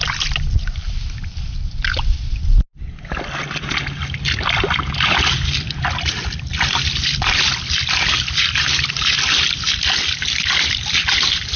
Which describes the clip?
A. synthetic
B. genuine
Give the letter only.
B